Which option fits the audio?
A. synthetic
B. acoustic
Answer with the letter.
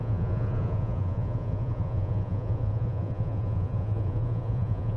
A